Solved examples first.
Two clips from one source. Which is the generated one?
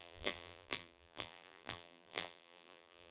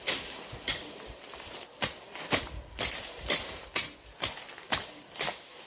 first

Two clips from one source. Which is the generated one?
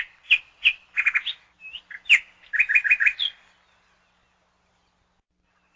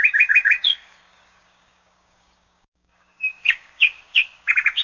second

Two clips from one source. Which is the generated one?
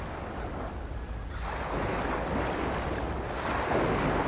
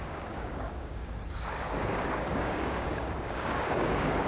second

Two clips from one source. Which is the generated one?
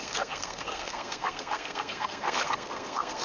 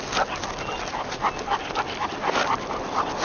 first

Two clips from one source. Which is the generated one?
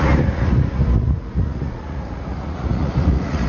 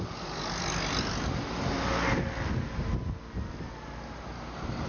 first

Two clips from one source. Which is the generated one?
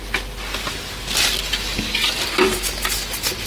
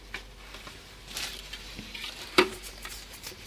second